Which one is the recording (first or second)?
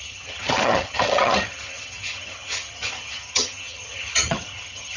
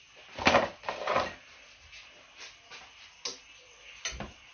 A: second